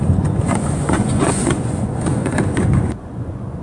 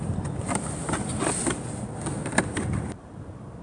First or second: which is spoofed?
first